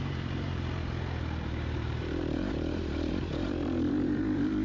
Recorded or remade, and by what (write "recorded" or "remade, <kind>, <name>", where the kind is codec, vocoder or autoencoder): remade, vocoder, BigVGAN v2